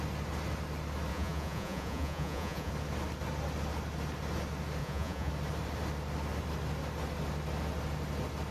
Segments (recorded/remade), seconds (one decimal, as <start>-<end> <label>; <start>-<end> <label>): 0.0-1.1 recorded; 1.1-2.7 remade; 2.7-4.8 recorded; 4.8-5.3 remade; 5.3-8.5 recorded